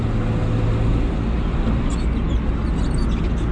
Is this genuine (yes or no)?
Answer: yes